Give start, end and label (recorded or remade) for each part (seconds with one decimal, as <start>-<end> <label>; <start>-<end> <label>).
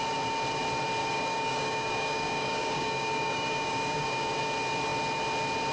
0.0-1.0 recorded; 1.0-4.4 remade; 4.4-5.7 recorded